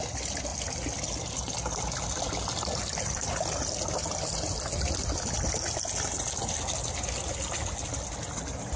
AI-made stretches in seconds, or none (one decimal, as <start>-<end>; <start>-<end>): none